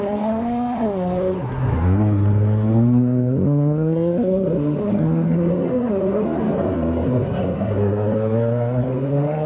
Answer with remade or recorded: remade